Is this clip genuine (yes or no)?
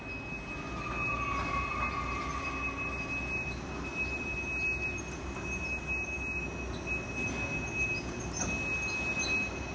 yes